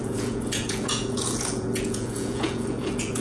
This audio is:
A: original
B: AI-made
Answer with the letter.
B